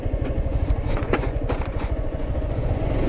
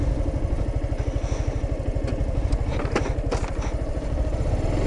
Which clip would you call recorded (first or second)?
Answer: second